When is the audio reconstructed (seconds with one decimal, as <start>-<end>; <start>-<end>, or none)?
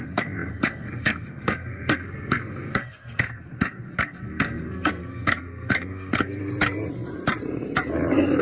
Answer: 0.0-6.4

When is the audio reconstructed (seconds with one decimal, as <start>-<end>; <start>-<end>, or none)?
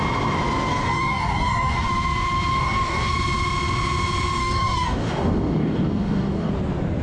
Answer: 0.7-1.9; 2.5-3.1; 4.4-6.5